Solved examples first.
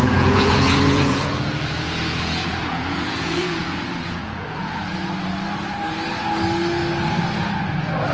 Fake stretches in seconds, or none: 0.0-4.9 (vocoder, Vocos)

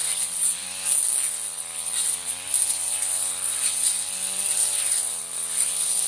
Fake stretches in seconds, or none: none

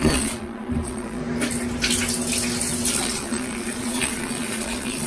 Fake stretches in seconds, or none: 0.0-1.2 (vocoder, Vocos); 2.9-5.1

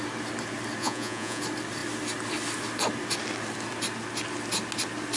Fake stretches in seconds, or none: 0.8-1.4 (vocoder, Vocos)